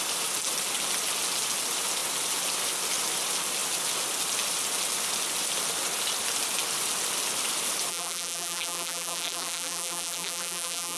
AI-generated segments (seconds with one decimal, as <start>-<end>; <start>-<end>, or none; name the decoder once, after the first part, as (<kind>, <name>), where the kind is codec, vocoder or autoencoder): 7.9-11.0 (vocoder, BigVGAN v2)